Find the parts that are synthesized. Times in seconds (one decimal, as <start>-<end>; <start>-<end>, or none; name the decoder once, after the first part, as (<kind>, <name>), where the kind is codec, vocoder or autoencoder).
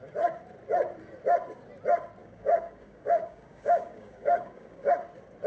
2.2-4.9 (codec, DAC)